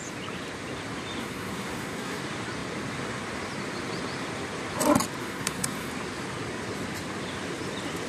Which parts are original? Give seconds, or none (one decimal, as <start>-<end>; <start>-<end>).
0.0-1.2; 2.2-5.2; 5.9-8.1